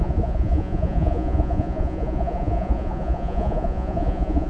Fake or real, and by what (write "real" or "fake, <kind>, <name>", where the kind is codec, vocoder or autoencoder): fake, vocoder, Vocos